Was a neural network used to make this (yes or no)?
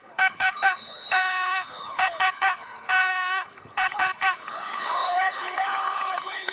yes